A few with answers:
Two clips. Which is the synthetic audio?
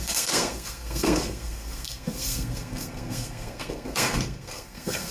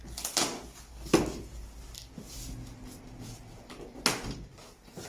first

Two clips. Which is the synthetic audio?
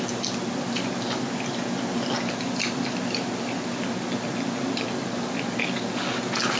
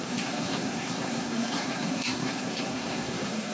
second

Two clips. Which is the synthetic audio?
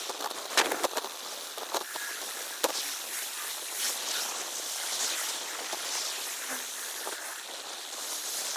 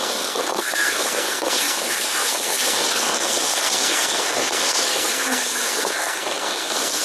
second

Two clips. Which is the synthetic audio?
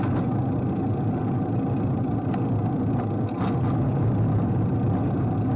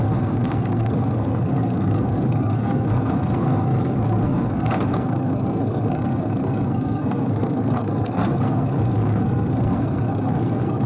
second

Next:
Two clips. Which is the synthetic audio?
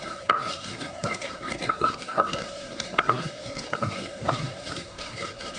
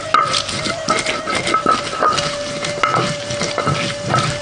first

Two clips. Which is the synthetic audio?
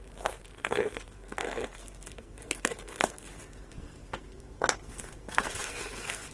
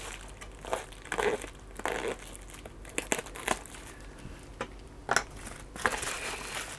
first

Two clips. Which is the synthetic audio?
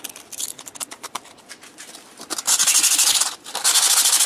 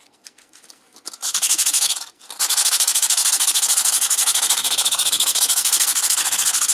second